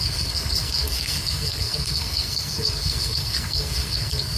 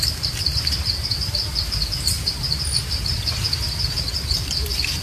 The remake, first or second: first